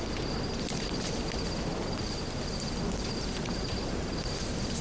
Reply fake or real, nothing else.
real